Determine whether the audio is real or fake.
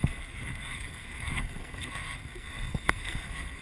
fake